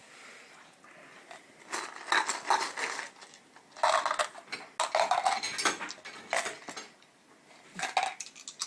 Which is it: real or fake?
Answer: real